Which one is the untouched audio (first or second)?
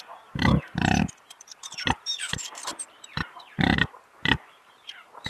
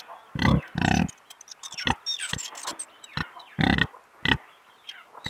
second